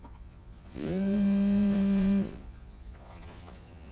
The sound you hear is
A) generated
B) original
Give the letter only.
A